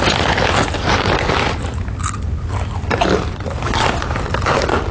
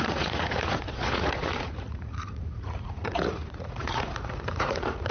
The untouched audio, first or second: first